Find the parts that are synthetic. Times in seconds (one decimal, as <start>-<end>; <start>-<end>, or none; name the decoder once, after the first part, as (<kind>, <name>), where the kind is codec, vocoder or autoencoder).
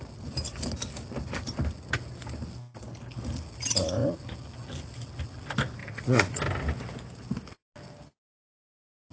5.8-6.4 (vocoder, Vocos)